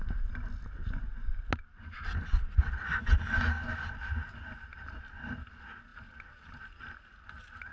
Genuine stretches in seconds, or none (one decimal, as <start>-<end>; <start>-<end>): 0.0-7.7